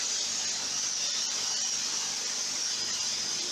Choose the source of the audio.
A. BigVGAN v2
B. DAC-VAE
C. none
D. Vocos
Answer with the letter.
C